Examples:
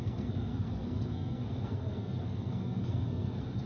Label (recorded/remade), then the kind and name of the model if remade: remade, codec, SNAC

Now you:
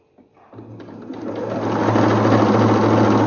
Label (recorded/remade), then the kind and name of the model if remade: recorded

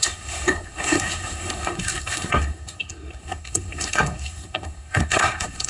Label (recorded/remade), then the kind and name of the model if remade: remade, codec, SNAC